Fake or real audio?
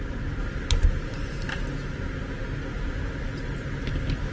real